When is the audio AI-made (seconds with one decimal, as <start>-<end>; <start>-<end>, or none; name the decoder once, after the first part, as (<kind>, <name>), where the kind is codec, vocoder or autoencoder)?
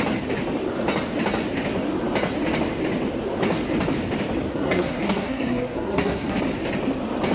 4.5-6.4 (codec, SNAC)